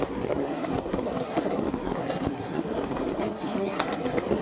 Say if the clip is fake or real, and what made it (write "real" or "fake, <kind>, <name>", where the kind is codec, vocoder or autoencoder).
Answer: fake, codec, SNAC